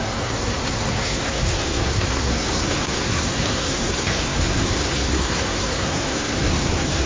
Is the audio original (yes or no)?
no